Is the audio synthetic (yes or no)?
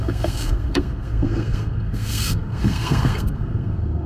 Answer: yes